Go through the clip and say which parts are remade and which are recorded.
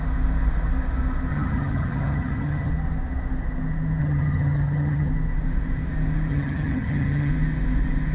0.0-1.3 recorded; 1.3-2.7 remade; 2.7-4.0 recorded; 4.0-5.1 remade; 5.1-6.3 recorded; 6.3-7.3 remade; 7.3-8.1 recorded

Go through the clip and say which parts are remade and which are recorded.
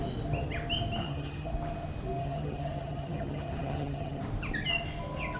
0.0-1.0 recorded; 1.0-1.5 remade; 1.5-2.2 recorded; 2.2-4.2 remade; 4.2-5.4 recorded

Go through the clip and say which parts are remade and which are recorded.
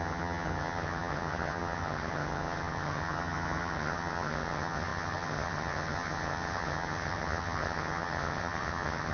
0.0-9.1 remade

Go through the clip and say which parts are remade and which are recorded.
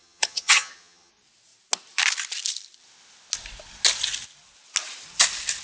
0.0-1.1 remade; 1.1-5.6 recorded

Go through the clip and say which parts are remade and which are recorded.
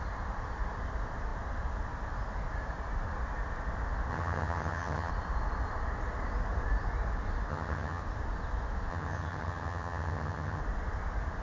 0.0-4.1 recorded; 4.1-5.1 remade; 5.1-7.5 recorded; 7.5-8.0 remade; 8.0-8.9 recorded; 8.9-10.6 remade; 10.6-11.4 recorded